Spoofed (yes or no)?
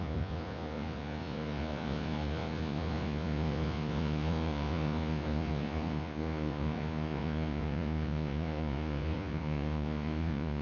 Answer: yes